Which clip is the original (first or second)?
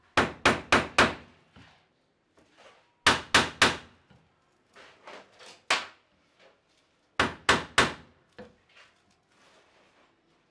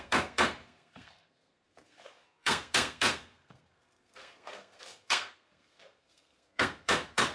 first